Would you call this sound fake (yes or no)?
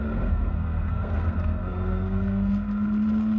yes